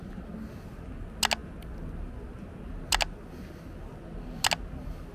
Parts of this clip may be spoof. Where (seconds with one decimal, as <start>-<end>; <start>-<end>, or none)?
none